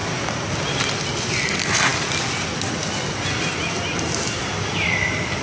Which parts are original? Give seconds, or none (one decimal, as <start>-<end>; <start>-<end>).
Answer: 0.0-5.4